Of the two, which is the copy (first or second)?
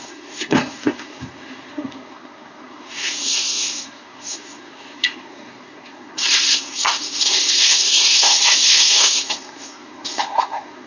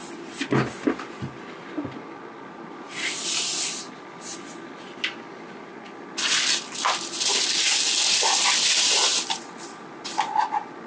first